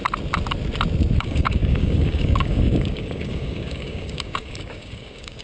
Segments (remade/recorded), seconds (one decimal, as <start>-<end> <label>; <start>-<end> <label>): 0.0-1.2 recorded; 1.2-5.4 remade